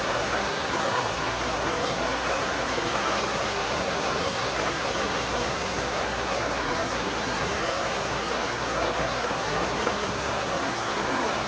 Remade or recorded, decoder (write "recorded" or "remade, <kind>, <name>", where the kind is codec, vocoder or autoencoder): remade, codec, SNAC